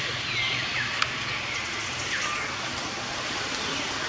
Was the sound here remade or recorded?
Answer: recorded